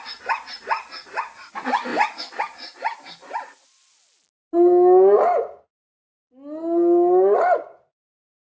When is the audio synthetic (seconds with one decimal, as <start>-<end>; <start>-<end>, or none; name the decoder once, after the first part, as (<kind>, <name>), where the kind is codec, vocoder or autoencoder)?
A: none